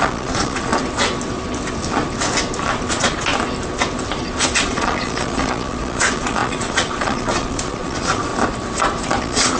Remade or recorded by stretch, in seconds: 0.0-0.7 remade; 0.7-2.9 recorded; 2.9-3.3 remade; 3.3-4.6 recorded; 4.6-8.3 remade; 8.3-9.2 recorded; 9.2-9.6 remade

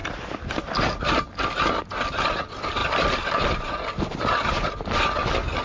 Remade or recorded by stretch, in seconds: 0.0-0.6 remade; 0.6-2.8 recorded; 2.8-5.0 remade; 5.0-5.6 recorded

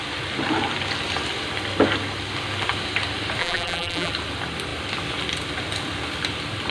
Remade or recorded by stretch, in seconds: 0.0-3.4 recorded; 3.4-4.1 remade; 4.1-6.7 recorded

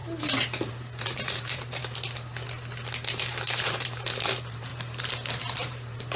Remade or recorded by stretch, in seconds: 0.0-0.7 recorded; 0.7-1.8 remade; 1.8-3.2 recorded; 3.2-6.2 remade